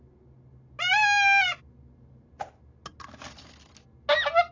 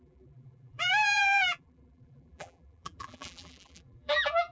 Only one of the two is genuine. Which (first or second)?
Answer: first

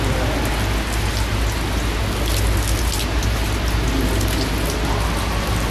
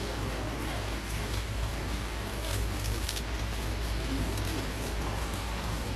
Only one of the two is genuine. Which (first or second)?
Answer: first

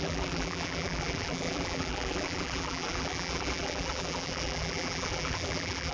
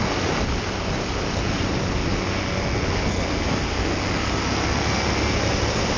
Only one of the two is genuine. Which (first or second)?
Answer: second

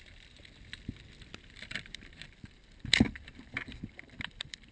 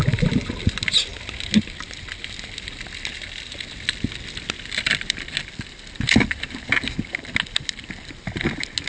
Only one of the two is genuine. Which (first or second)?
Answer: second